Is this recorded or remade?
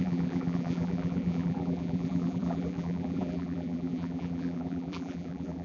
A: remade